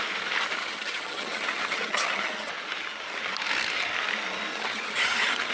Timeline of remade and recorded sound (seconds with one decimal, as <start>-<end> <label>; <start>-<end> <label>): 0.0-0.6 recorded; 0.6-2.5 remade; 2.5-4.5 recorded; 4.5-5.5 remade